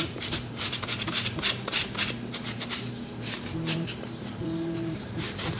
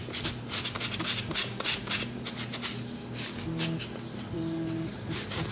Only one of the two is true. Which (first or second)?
second